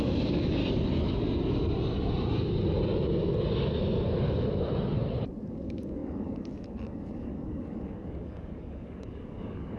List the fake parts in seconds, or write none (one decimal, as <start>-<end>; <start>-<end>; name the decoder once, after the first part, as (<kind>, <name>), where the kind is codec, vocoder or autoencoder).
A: 0.0-0.6 (codec, DAC); 5.5-9.8